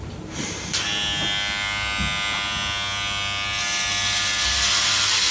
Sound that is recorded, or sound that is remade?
recorded